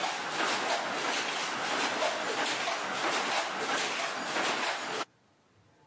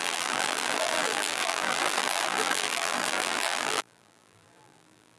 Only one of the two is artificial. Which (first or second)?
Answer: second